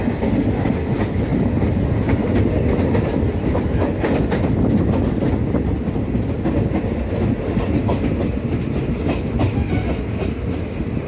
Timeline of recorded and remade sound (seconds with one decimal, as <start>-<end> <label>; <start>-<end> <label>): 0.0-11.1 recorded